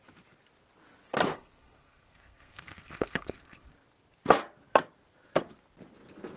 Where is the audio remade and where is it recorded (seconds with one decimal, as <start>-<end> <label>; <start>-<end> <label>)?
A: 0.0-1.3 recorded; 1.3-3.7 remade; 3.7-6.4 recorded